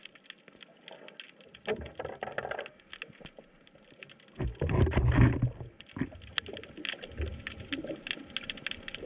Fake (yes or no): no